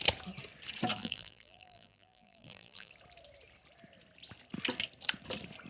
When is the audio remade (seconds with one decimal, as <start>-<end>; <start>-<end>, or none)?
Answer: 1.0-2.9